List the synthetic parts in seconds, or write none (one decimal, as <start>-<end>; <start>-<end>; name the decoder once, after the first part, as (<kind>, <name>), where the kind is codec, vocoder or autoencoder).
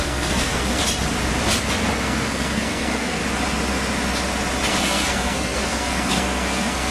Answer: 0.0-0.8 (codec, SNAC); 2.0-3.2; 4.7-6.9